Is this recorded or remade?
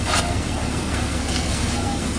remade